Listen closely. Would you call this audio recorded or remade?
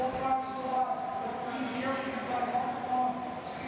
recorded